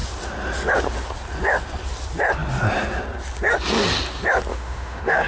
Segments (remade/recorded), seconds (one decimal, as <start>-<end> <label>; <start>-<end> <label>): 0.0-4.5 recorded; 4.5-5.3 remade